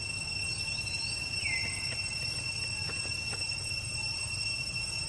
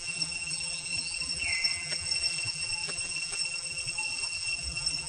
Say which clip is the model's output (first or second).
second